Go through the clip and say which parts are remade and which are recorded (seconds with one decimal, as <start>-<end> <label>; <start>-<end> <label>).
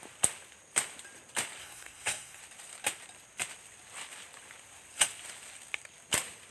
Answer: 0.0-1.6 recorded; 1.6-2.4 remade; 2.4-6.5 recorded